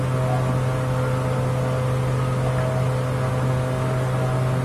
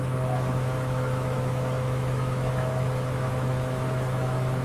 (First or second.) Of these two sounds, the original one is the first